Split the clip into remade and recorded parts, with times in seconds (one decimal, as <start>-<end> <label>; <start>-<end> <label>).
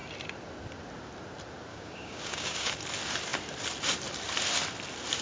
0.0-1.7 recorded; 1.7-2.7 remade; 2.7-5.2 recorded